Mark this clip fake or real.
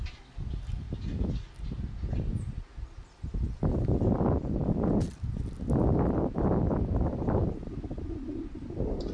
real